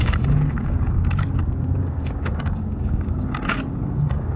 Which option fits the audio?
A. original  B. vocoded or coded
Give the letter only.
B